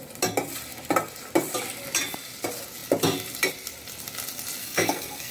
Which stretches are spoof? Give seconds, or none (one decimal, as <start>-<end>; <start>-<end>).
4.6-5.3